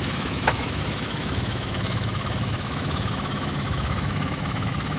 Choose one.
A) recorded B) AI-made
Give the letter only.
B